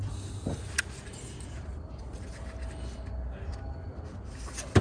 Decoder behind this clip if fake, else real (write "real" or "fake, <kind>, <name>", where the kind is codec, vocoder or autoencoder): real